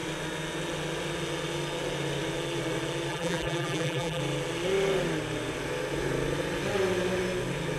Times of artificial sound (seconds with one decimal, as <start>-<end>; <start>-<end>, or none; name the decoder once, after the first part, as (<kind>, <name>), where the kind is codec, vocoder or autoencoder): 3.1-4.2 (vocoder, BigVGAN v2)